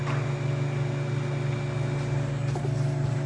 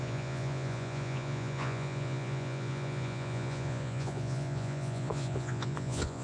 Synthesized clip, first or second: second